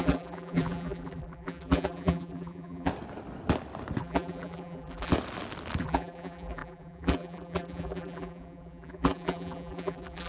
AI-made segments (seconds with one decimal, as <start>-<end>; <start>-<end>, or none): 0.0-2.9; 4.0-5.1; 5.8-10.3